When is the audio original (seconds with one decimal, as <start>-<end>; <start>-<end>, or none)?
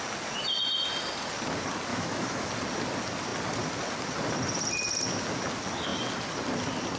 0.0-1.9; 2.5-7.0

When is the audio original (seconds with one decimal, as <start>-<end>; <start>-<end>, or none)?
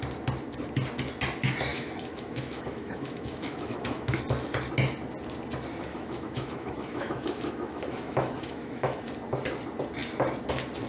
0.0-1.7; 4.2-5.9; 9.0-10.9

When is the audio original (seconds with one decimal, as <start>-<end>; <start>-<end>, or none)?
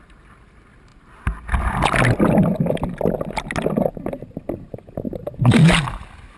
0.0-6.4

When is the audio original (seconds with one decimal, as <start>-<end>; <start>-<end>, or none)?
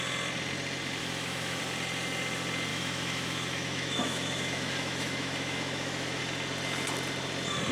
0.0-1.0; 1.6-2.7; 6.2-7.7